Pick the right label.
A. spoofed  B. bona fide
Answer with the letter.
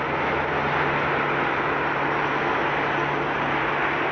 B